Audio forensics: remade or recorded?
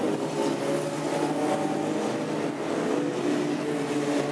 recorded